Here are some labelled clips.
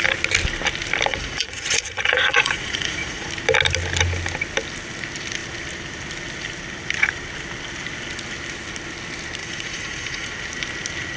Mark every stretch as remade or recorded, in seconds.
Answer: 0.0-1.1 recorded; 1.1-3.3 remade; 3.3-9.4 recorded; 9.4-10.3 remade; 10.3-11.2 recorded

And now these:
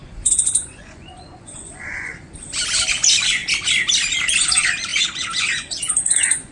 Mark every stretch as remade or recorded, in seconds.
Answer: 0.0-2.1 remade; 2.1-2.9 recorded; 2.9-3.4 remade; 3.4-4.4 recorded; 4.4-6.5 remade

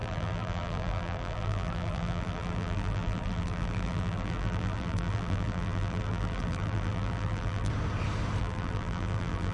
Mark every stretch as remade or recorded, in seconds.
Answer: 0.0-7.7 remade; 7.7-8.4 recorded; 8.4-9.5 remade

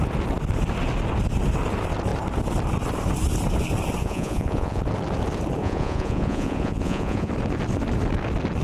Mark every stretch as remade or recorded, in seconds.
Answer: 0.0-4.0 recorded; 4.0-4.8 remade; 4.8-5.6 recorded; 5.6-7.3 remade; 7.3-8.6 recorded

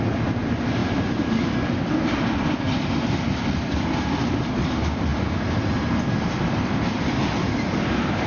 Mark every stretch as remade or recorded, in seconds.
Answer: 0.0-8.3 recorded